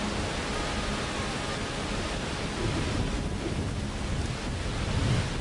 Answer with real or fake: real